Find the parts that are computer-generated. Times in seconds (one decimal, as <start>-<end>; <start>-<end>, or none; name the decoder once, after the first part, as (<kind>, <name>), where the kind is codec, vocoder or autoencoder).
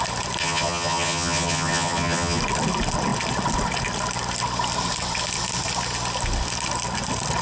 0.4-2.4 (vocoder, HiFi-GAN)